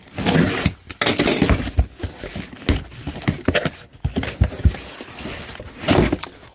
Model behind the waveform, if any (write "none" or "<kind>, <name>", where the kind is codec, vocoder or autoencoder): none